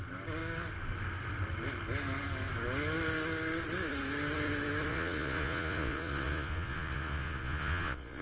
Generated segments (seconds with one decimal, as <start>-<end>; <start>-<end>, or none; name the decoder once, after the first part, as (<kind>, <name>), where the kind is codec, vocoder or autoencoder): 4.9-8.2 (vocoder, Vocos)